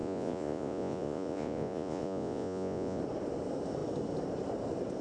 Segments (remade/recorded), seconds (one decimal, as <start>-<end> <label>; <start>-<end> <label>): 0.0-3.0 remade; 3.0-5.0 recorded